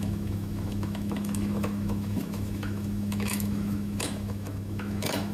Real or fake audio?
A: fake